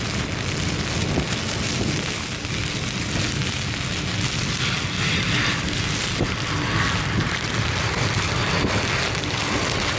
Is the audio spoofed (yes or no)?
no